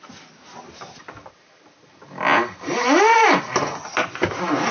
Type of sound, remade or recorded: recorded